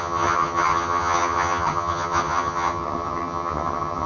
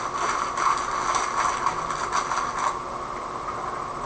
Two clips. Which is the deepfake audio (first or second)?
first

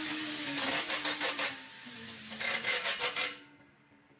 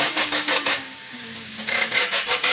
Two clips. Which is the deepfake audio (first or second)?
second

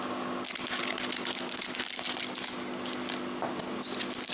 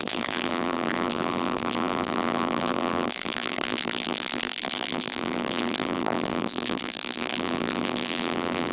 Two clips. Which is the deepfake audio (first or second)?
second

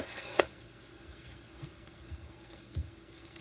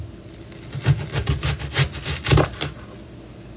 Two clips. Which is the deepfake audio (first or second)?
first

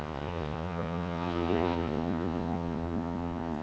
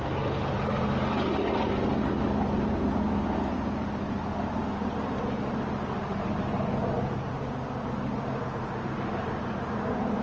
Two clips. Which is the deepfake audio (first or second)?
first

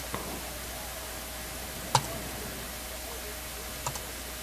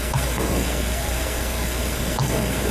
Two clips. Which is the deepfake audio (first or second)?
second